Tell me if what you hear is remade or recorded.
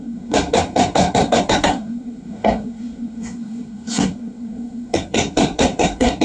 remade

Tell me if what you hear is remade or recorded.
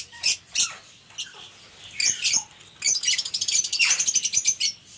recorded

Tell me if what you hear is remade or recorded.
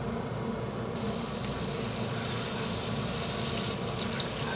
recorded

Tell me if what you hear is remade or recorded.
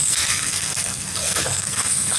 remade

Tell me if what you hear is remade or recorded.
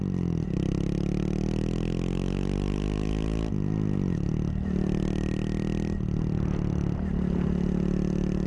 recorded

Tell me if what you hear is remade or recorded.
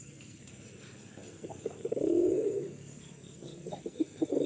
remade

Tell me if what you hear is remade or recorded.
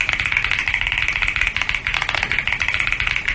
recorded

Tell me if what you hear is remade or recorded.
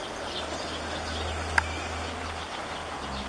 recorded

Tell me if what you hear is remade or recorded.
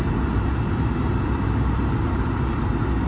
recorded